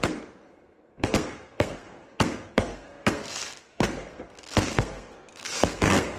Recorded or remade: remade